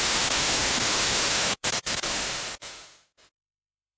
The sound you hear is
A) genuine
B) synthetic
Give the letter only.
B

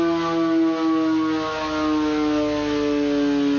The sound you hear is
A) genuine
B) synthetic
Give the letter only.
A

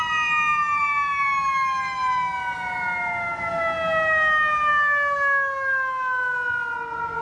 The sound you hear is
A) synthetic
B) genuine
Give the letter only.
B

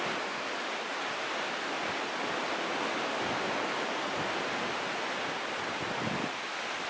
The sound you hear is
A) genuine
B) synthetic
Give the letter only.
A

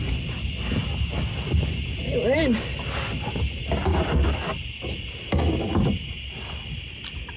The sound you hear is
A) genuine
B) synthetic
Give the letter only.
A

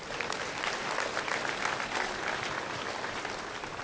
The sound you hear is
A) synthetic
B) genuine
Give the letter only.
A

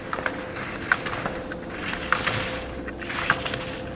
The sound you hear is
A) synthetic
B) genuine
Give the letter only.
B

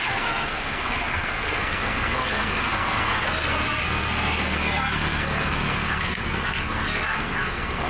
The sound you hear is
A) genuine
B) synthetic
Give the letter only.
B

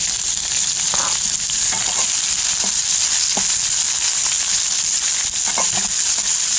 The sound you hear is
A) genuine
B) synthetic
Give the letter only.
A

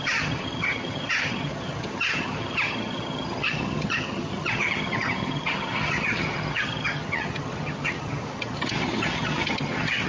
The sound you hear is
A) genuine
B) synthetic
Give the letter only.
B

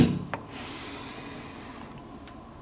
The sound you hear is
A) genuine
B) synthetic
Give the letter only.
A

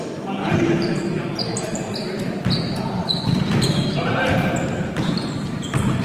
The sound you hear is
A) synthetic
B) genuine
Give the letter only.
A